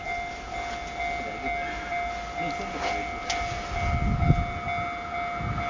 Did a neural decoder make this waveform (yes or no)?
no